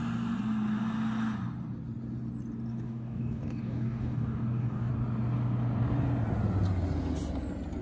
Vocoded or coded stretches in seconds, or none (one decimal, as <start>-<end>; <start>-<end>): 2.7-4.9